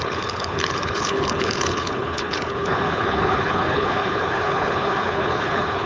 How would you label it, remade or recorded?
remade